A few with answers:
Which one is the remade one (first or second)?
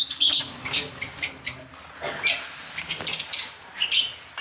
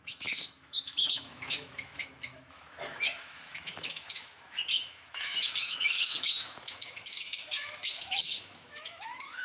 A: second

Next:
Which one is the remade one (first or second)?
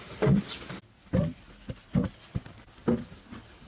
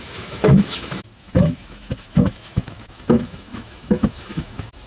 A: second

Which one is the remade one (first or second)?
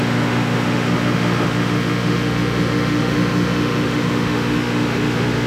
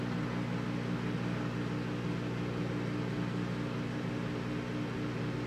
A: first